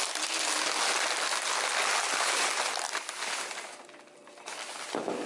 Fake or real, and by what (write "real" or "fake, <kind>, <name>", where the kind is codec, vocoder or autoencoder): real